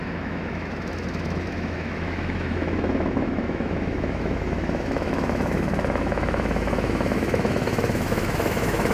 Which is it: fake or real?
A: fake